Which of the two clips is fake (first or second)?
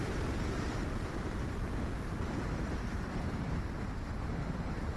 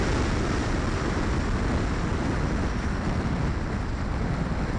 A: first